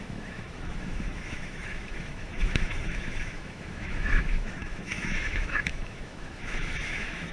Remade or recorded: remade